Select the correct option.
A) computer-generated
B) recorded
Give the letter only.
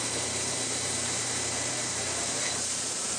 A